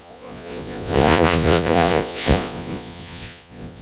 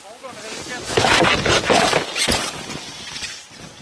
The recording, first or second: second